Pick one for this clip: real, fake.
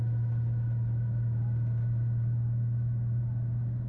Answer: real